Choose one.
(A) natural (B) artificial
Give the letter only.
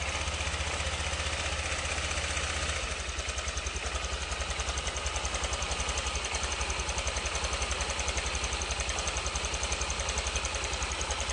A